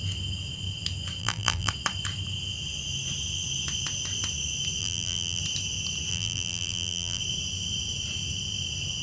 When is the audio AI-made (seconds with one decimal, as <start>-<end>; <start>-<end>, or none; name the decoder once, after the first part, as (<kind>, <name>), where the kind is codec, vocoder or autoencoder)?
1.2-1.7 (vocoder, BigVGAN v2); 4.8-5.4; 6.1-7.2